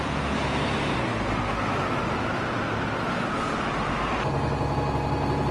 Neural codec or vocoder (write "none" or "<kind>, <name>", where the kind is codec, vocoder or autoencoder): none